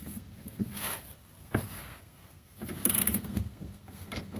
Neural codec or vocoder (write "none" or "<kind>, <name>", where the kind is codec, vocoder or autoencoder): codec, SNAC